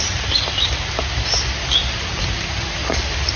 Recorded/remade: recorded